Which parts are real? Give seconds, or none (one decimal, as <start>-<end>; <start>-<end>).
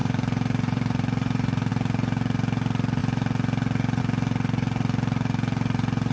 1.7-6.1